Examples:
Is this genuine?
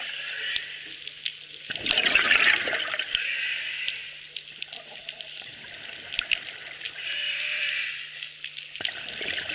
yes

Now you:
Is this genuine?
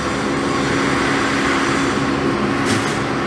yes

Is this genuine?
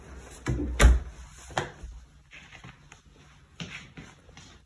yes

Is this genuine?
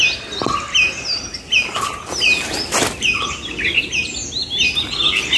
yes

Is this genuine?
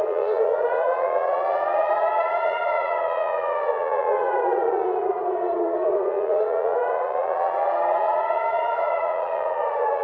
no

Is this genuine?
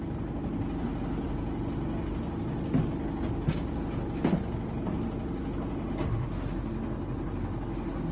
yes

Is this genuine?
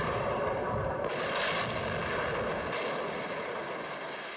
yes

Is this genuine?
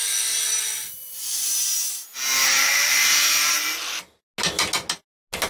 yes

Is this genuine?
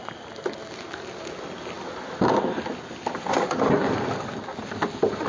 yes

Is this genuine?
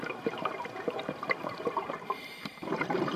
no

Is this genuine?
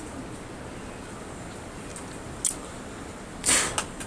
yes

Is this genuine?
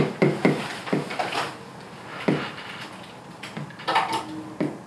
yes